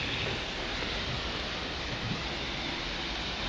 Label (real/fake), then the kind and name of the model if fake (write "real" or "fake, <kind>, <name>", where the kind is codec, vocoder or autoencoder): real